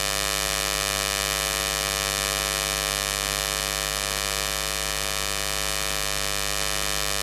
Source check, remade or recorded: recorded